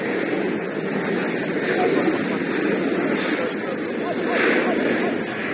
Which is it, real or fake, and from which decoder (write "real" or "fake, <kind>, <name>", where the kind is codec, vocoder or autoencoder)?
real